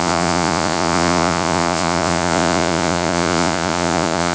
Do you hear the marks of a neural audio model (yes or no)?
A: yes